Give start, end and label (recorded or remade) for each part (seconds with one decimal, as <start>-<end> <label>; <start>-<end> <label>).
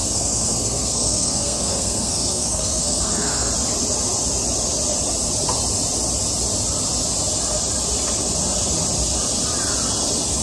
0.0-3.5 remade; 3.5-10.4 recorded